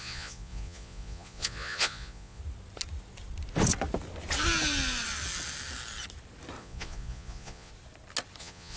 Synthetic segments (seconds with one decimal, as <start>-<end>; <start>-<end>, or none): 0.0-2.4; 6.6-7.7; 8.4-8.8